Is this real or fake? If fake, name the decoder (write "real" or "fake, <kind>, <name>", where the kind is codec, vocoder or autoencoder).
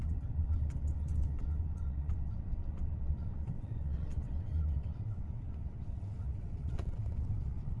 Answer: fake, vocoder, WaveNeXt